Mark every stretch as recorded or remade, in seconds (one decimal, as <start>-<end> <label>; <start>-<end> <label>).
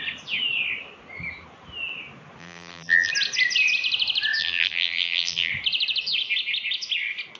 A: 0.0-2.4 recorded; 2.4-3.1 remade; 3.1-4.4 recorded; 4.4-5.5 remade; 5.5-7.4 recorded